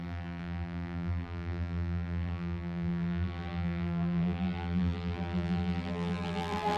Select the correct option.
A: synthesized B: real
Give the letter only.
A